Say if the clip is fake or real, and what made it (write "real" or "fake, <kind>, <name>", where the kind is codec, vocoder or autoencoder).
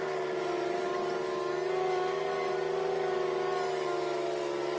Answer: real